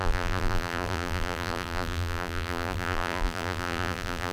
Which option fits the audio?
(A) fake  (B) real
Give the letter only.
A